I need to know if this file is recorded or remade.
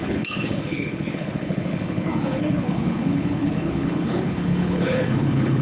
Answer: remade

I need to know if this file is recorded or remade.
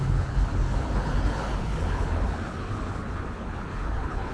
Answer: remade